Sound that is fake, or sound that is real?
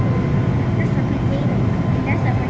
real